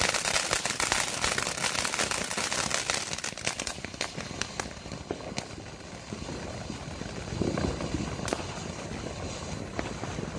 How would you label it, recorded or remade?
recorded